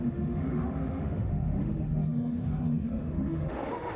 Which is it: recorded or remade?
remade